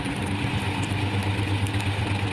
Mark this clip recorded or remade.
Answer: recorded